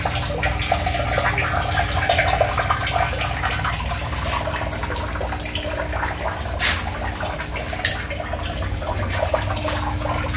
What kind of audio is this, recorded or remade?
recorded